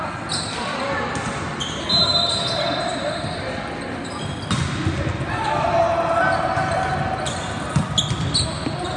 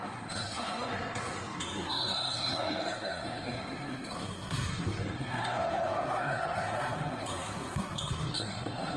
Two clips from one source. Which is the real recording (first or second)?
first